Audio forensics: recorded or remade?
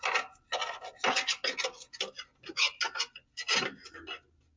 recorded